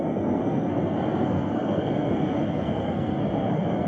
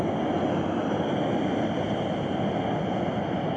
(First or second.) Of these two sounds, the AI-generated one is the first